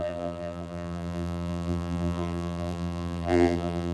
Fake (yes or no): yes